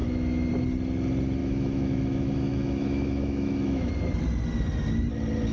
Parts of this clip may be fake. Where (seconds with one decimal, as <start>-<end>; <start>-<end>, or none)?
0.0-0.5; 1.4-3.9